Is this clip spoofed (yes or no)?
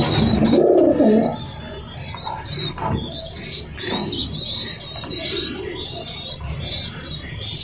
no